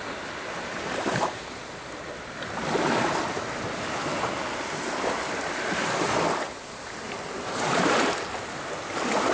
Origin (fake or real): real